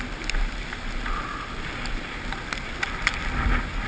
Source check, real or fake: real